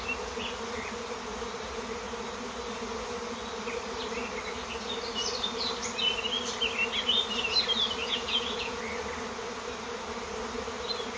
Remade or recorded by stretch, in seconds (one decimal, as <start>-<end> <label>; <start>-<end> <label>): 0.0-8.0 recorded; 8.0-8.8 remade; 8.8-11.2 recorded